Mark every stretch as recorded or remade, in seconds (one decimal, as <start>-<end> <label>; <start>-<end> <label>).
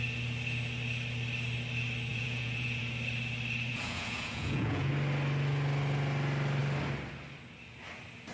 0.0-2.1 recorded; 2.1-2.8 remade; 2.8-3.7 recorded; 3.7-4.9 remade; 4.9-8.3 recorded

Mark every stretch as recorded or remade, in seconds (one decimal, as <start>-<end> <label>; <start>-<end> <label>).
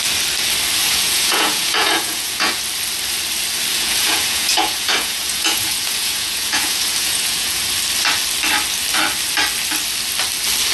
0.0-0.8 recorded; 0.8-2.6 remade; 2.6-3.7 recorded; 3.7-7.6 remade; 7.6-10.7 recorded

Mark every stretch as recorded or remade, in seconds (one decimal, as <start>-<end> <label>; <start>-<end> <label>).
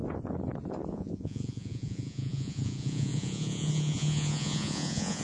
0.0-0.9 recorded; 0.9-5.2 remade